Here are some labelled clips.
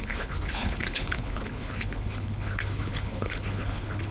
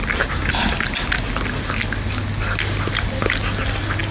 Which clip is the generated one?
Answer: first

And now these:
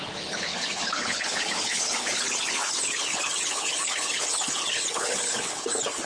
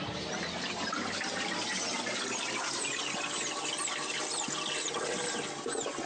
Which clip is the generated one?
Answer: first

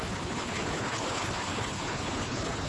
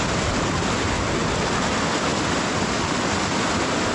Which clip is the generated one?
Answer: first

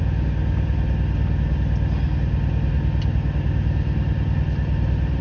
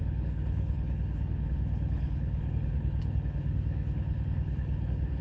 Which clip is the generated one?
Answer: second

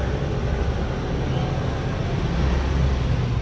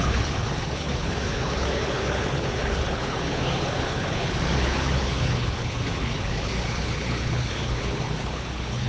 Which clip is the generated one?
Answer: second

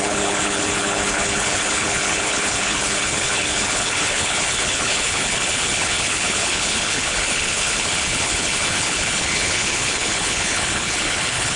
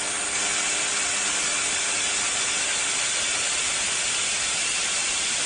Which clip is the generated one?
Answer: first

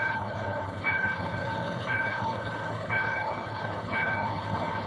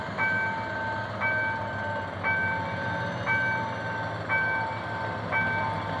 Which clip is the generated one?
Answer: first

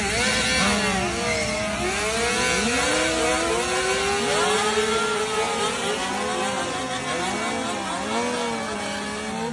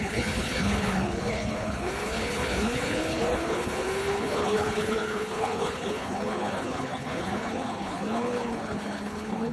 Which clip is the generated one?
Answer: second